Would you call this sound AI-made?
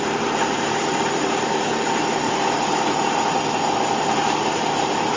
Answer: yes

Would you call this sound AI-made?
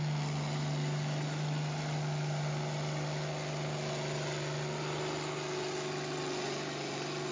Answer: no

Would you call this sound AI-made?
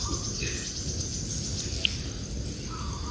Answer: no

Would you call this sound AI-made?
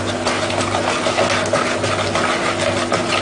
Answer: no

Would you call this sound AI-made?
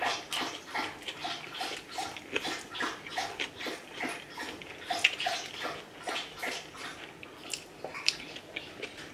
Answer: no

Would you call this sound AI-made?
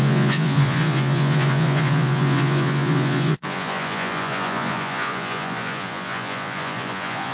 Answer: yes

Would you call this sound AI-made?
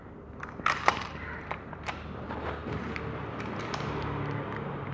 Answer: yes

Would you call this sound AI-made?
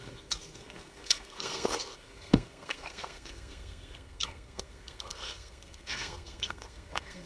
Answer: yes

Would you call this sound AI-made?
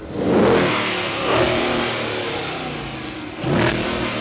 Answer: no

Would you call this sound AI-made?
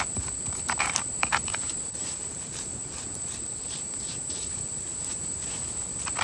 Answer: yes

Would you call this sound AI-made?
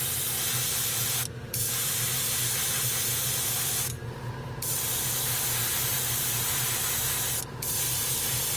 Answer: no